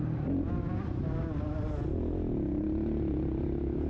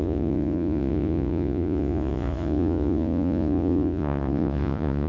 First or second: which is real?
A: first